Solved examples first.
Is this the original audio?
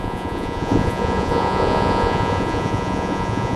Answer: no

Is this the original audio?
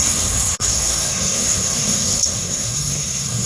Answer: no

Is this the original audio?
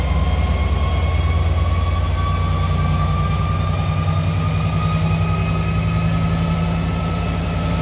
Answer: yes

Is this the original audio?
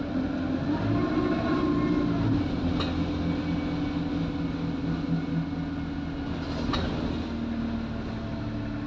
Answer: yes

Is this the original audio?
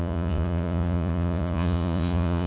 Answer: no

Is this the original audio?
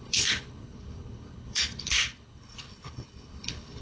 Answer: no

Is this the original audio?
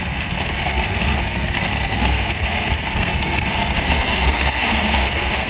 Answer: no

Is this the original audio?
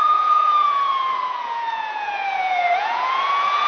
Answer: no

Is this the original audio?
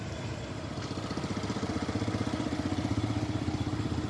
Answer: yes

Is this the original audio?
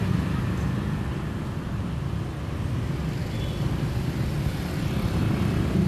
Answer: yes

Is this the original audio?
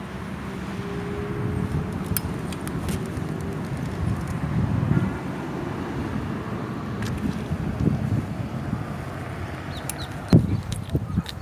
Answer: yes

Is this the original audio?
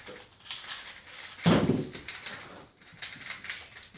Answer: no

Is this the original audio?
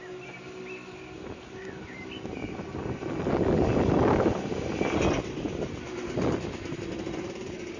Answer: yes